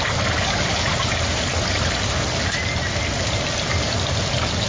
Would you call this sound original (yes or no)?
yes